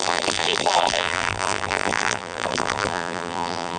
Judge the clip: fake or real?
fake